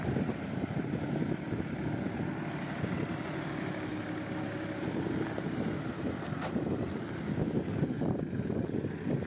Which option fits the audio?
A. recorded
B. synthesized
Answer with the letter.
A